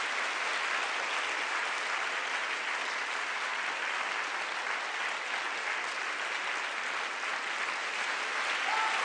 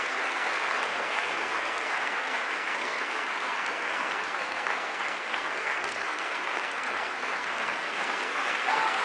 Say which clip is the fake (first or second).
second